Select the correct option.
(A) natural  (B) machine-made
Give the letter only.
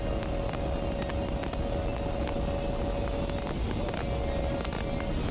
A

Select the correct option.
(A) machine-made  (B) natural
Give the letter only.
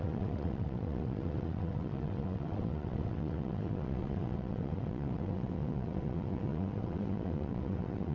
A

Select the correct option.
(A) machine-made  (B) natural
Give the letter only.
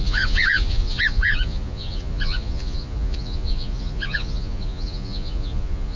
A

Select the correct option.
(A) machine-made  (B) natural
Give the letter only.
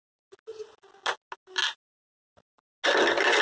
B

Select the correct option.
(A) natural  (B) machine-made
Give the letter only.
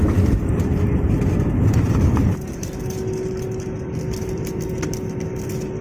A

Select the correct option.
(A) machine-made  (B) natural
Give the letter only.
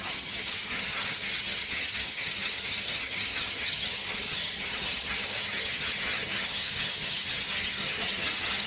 A